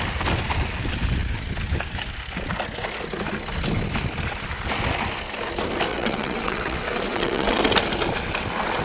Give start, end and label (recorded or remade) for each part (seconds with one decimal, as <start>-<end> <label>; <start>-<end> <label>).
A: 0.0-5.9 recorded; 5.9-7.6 remade; 7.6-8.8 recorded